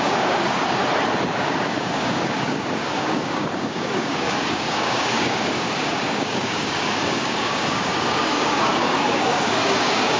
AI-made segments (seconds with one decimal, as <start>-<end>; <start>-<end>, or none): 0.0-0.8; 1.4-10.2

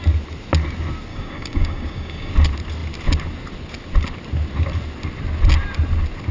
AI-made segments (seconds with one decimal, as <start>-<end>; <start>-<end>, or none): 1.1-2.3

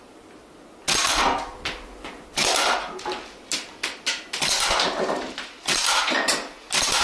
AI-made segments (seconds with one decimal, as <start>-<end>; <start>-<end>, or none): none

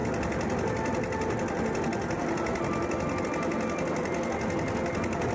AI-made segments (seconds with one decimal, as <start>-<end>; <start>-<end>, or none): none

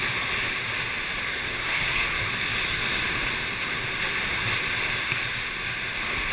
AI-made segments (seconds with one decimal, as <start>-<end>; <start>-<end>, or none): 1.3-2.3

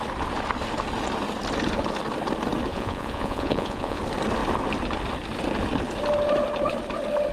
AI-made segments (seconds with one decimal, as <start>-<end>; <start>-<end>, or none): 2.7-4.0

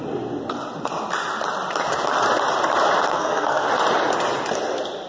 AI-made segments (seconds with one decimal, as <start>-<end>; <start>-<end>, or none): 3.1-3.7